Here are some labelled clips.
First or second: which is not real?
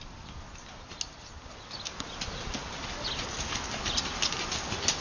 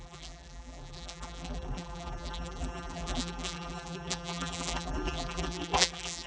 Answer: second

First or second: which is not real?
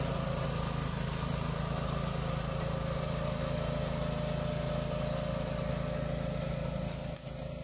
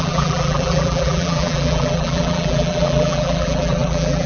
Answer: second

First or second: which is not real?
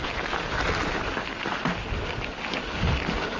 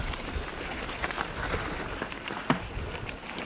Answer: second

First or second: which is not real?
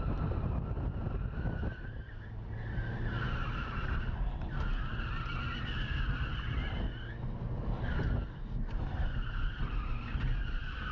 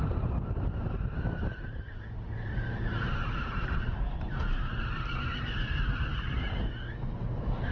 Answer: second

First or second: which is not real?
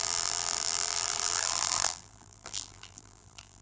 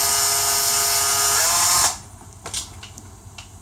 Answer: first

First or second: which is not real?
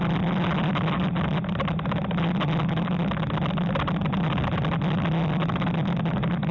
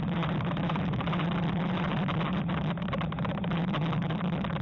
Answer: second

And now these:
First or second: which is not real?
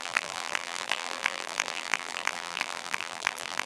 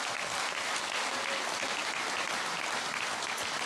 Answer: first